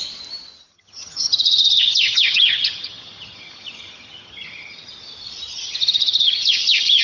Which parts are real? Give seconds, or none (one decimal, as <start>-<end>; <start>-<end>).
0.0-0.7; 4.9-5.5